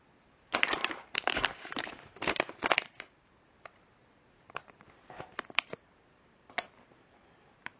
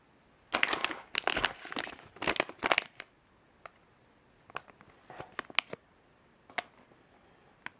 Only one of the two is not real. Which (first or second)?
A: first